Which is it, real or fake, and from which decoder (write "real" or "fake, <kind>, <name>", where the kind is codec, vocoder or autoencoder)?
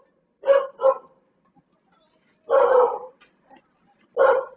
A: real